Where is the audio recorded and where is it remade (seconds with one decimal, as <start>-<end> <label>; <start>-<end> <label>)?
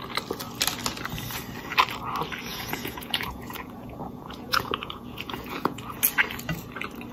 0.0-2.5 recorded; 2.5-5.8 remade; 5.8-7.1 recorded